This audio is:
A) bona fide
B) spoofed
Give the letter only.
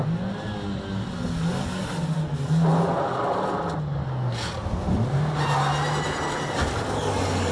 A